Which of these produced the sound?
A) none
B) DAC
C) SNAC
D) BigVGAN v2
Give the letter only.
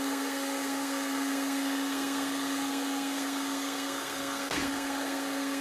C